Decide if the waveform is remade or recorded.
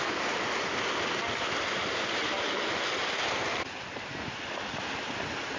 recorded